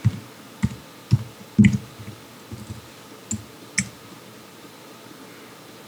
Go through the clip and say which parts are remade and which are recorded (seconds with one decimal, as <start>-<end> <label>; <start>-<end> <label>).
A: 0.0-5.9 recorded